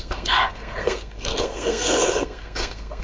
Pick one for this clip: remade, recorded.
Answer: remade